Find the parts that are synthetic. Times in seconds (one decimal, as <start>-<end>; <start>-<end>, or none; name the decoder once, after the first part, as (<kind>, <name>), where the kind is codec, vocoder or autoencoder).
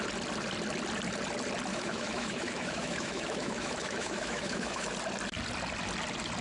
1.7-4.9 (autoencoder, DAC-VAE)